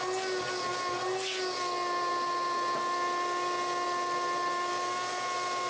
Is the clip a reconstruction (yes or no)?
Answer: no